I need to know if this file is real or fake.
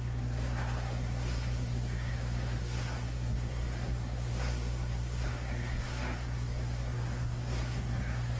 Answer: fake